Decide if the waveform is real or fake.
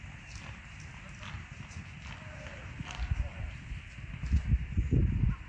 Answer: real